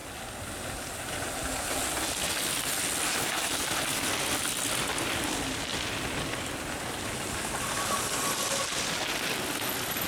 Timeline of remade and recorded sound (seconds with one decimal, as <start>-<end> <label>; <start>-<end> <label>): 0.0-10.1 recorded